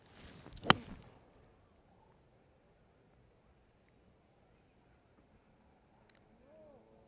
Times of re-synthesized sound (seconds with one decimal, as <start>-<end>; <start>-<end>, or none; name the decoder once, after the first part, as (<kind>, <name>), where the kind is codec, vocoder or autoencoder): none

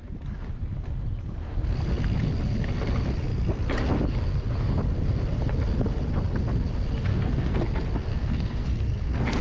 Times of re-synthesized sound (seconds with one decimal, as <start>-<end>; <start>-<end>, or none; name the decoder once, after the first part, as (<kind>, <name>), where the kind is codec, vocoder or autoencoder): 7.1-7.6 (codec, SNAC); 8.1-9.4

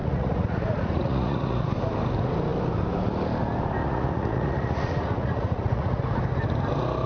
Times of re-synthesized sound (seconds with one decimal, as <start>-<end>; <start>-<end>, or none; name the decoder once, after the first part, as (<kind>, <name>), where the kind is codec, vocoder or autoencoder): 0.0-1.7 (vocoder, Vocos); 3.8-6.0